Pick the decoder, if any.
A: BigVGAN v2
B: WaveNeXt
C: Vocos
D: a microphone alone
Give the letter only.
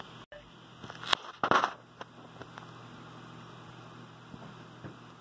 D